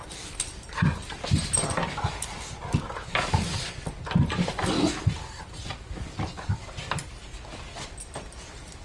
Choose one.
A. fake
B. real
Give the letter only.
B